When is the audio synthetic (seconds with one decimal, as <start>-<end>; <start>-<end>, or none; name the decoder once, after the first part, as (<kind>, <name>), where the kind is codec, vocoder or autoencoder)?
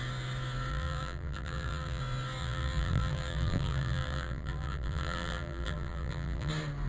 0.7-2.0 (vocoder, BigVGAN v2); 2.4-6.5